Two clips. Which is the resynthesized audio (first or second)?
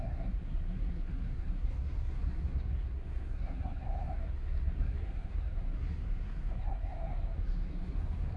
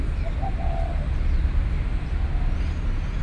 first